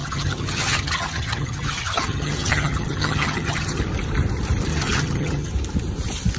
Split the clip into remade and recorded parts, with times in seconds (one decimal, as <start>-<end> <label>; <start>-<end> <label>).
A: 0.0-3.8 remade; 3.8-4.7 recorded; 4.7-5.5 remade; 5.5-6.4 recorded